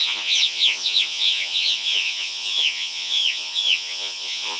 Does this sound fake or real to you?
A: fake